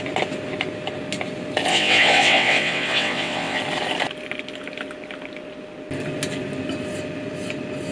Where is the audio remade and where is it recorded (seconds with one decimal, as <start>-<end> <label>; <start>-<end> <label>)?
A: 0.0-1.7 recorded; 1.7-3.6 remade; 3.6-7.9 recorded